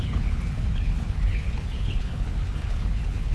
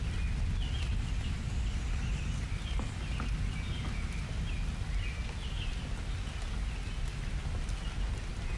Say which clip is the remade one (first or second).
first